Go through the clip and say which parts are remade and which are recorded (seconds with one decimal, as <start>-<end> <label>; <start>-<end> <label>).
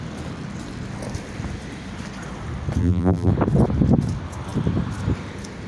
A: 0.0-2.8 recorded; 2.8-3.3 remade; 3.3-5.7 recorded